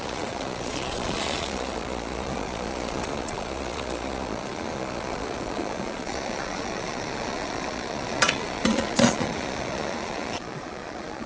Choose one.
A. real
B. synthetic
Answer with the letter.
B